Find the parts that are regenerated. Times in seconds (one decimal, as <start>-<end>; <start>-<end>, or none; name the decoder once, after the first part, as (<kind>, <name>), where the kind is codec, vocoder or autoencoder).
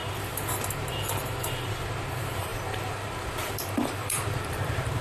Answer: 2.1-5.0 (vocoder, BigVGAN v2)